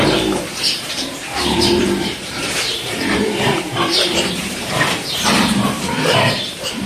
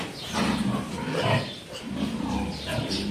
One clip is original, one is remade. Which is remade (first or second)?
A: first